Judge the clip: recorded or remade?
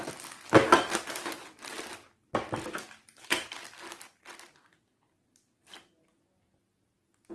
recorded